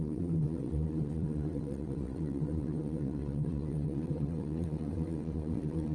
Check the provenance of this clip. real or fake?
fake